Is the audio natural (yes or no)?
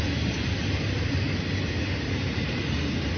yes